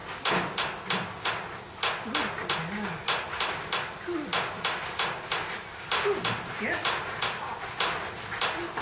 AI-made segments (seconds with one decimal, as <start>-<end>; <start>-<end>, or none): none